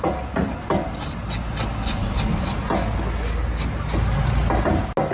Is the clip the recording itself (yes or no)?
yes